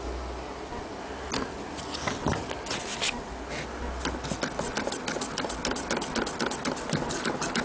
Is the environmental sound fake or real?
real